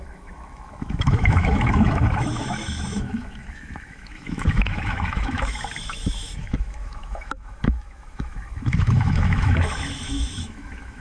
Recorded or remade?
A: remade